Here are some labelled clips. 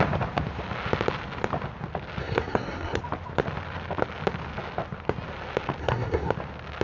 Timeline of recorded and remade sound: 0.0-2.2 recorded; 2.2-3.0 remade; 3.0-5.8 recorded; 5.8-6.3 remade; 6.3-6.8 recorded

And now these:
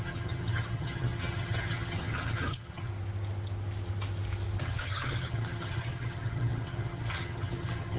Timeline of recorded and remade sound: 0.0-2.9 remade; 2.9-4.6 recorded; 4.6-8.0 remade

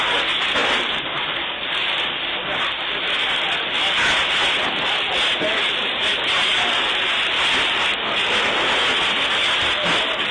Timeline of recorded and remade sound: 0.0-0.6 recorded; 0.6-2.6 remade; 2.6-6.1 recorded; 6.1-6.7 remade; 6.7-10.3 recorded

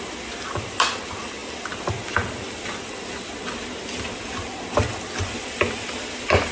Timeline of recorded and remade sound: 0.0-6.5 recorded

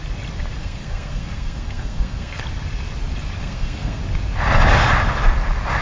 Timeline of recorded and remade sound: 0.0-0.6 recorded; 0.6-2.4 remade; 2.4-3.4 recorded; 3.4-4.0 remade; 4.0-5.8 recorded

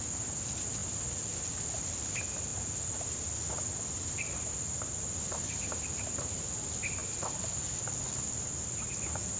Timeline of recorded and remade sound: 0.0-0.8 recorded; 0.8-1.8 remade; 1.8-7.0 recorded; 7.0-7.8 remade; 7.8-9.4 recorded